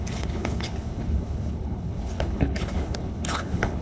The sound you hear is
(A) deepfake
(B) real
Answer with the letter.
A